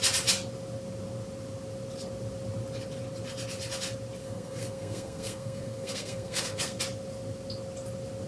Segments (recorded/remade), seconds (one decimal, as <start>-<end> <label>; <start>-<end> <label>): 0.0-4.2 recorded; 4.2-6.8 remade; 6.8-8.3 recorded